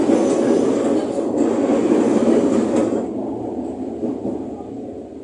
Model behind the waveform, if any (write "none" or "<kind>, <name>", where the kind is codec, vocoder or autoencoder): none